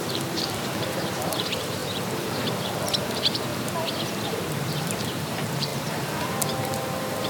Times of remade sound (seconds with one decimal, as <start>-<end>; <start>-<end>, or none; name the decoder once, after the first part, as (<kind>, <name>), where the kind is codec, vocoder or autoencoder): 0.0-3.5 (vocoder, BigVGAN v2); 4.3-7.3